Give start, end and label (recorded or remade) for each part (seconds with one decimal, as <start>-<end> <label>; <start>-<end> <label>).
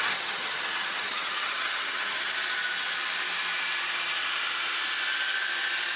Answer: 0.0-2.3 remade; 2.3-6.0 recorded